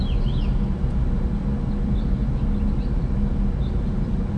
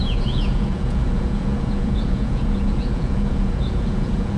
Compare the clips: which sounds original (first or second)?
first